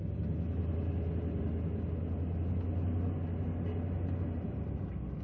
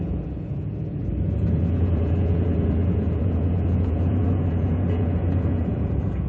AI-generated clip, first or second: second